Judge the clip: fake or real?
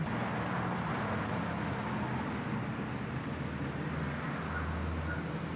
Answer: real